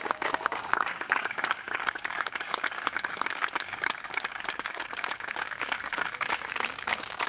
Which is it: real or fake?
fake